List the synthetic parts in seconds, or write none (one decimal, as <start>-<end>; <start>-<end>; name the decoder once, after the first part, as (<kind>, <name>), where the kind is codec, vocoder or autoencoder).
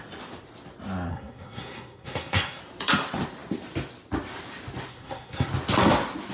1.1-2.6 (codec, SNAC); 4.9-5.5